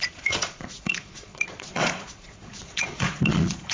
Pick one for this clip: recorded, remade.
remade